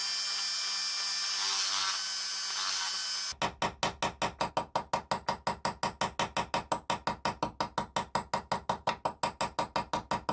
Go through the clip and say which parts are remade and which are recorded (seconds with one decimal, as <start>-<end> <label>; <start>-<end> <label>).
0.0-10.3 recorded